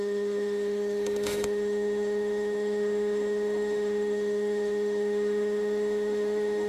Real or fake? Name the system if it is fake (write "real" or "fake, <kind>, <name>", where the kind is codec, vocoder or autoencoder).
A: fake, autoencoder, DAC-VAE